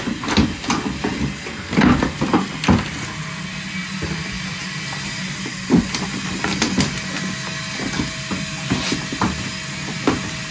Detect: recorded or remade recorded